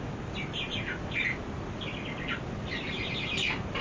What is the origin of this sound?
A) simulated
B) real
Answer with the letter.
B